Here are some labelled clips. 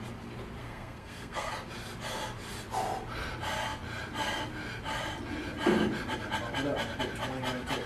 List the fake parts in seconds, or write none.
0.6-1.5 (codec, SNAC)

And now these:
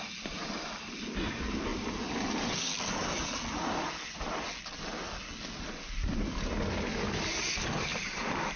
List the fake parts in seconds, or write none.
1.7-4.3 (vocoder, BigVGAN v2); 7.9-8.6

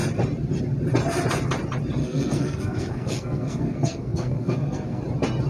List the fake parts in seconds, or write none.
2.0-5.0 (codec, SNAC)

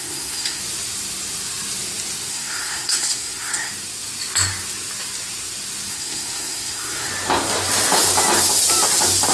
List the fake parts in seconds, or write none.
0.0-0.6 (codec, SNAC); 2.3-3.7; 5.9-7.1

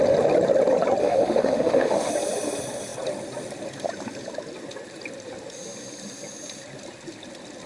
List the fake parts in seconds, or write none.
1.0-2.1 (autoencoder, DAC-VAE)